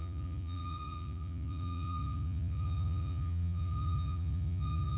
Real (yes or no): no